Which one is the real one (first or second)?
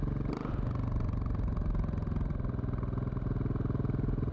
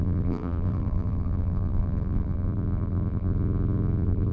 first